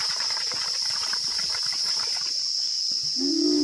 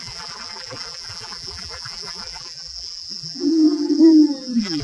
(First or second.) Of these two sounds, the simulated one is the second